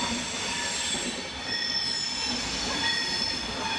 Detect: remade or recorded recorded